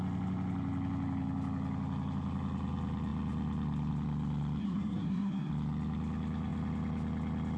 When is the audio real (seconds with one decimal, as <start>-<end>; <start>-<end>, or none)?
0.0-4.6; 5.5-7.6